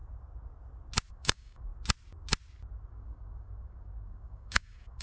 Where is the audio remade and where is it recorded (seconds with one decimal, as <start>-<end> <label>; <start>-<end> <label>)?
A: 0.0-1.1 recorded; 1.1-1.7 remade; 1.7-2.9 recorded; 2.9-5.0 remade